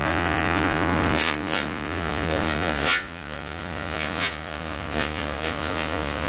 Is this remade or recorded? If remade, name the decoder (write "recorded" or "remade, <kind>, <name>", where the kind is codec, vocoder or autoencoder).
remade, vocoder, Vocos